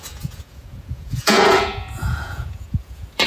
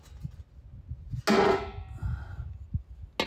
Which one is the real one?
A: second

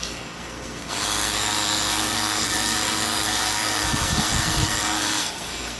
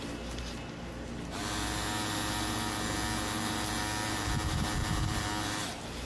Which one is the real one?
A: second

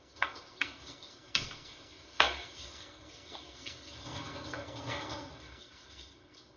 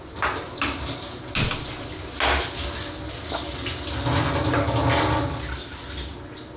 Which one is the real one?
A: second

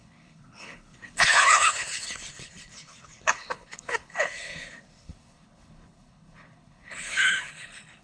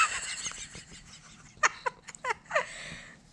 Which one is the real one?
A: second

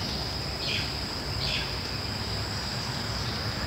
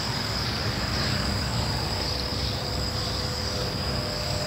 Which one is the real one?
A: first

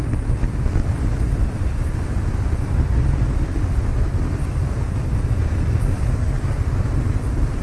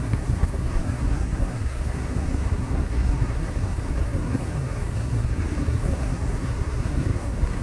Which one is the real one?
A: first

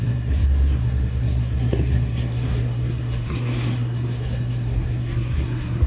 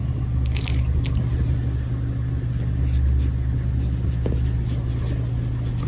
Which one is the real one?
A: second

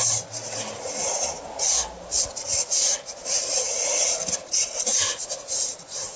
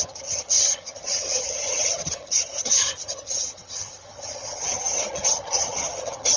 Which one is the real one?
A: first